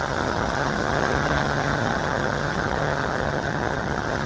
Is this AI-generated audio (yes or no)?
yes